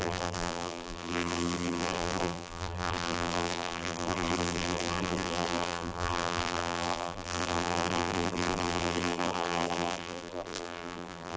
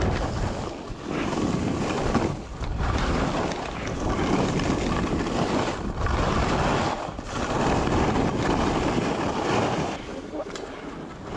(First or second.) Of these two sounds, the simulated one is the first